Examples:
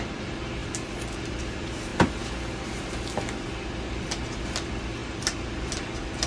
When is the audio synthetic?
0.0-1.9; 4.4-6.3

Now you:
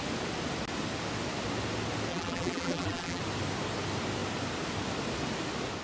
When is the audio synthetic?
2.1-3.2

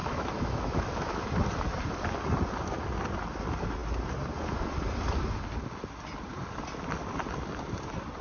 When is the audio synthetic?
0.0-1.2

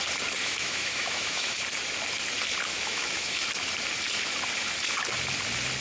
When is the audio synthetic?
0.4-1.6; 2.7-3.4

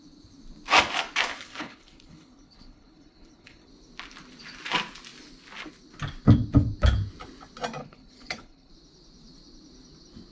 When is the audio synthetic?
1.3-3.7; 7.8-8.7

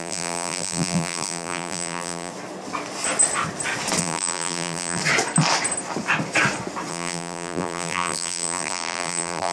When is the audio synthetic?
0.0-2.3; 4.0-5.0; 6.9-9.5